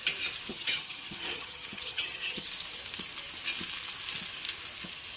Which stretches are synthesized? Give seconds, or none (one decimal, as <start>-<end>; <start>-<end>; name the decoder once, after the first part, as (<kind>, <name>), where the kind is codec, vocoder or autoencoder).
0.5-2.5 (vocoder, HiFi-GAN)